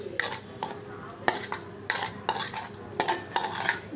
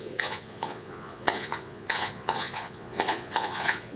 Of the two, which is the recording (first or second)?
first